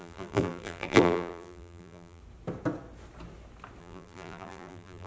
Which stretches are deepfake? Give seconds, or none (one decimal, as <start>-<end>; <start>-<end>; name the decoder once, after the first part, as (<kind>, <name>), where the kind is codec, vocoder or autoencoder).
0.0-2.2 (vocoder, BigVGAN v2); 3.8-5.1